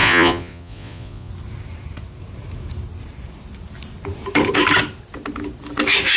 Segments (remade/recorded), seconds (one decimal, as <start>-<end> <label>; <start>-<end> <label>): 0.0-1.3 remade; 1.3-6.2 recorded

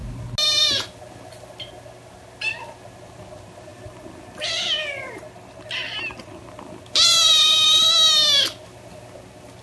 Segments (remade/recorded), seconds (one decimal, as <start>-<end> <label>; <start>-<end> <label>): 0.0-9.6 recorded

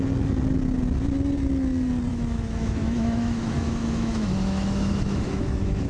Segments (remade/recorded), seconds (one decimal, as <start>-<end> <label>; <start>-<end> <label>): 0.0-2.1 recorded; 2.1-5.9 remade

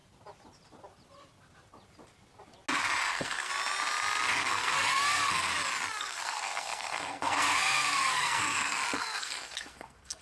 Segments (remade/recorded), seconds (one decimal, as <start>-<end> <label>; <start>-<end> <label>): 0.0-3.1 recorded; 3.1-3.5 remade; 3.5-4.3 recorded; 4.3-5.5 remade; 5.5-6.0 recorded; 6.0-10.2 remade

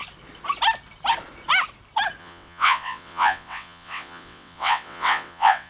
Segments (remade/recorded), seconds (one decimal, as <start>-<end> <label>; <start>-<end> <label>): 0.0-2.2 recorded; 2.2-5.7 remade

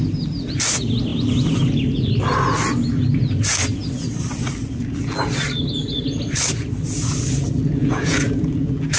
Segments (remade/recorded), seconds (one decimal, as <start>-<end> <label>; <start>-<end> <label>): 0.0-7.8 recorded; 7.8-8.5 remade; 8.5-9.0 recorded